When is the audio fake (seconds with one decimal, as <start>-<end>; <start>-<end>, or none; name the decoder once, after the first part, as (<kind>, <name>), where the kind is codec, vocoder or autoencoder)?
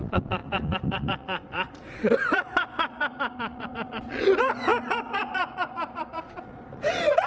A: 0.0-7.3 (vocoder, Vocos)